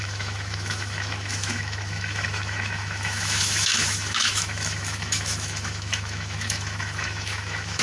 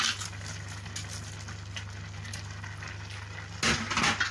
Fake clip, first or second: first